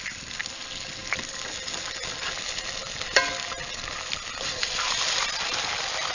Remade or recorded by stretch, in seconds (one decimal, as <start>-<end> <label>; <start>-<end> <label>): 0.0-6.1 recorded